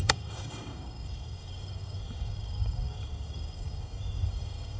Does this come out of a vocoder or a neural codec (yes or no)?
yes